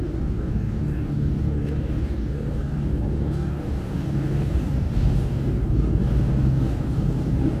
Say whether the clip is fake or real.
fake